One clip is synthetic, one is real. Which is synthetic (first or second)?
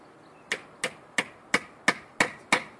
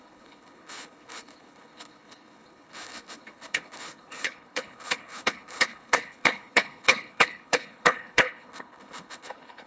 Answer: second